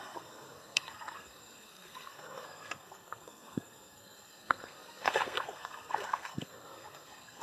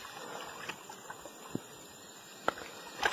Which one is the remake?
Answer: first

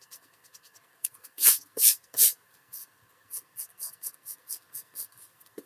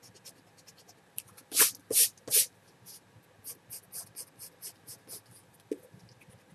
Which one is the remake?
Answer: first